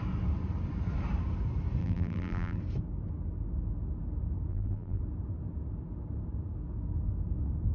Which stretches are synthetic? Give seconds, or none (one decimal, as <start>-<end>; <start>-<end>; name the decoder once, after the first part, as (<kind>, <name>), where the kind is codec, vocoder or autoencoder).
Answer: 1.8-2.6 (vocoder, BigVGAN v2); 4.5-5.0